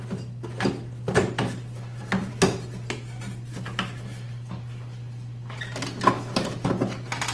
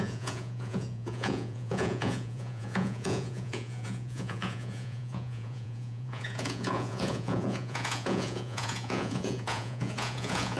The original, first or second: first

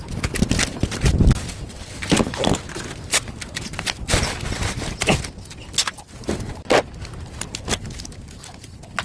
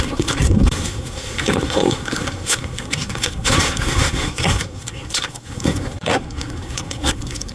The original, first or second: first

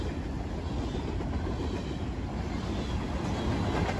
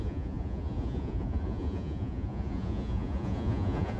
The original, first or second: first